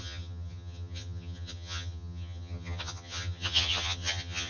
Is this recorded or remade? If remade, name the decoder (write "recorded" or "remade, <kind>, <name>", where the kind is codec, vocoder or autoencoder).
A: remade, vocoder, HiFi-GAN